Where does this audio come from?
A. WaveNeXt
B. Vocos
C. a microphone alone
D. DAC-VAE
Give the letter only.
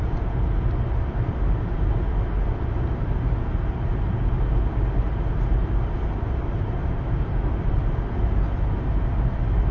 C